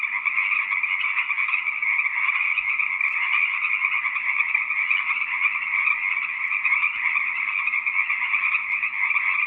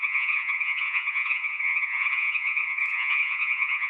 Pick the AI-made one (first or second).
second